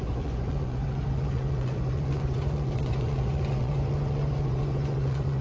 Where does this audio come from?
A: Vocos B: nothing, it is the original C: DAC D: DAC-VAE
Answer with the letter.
A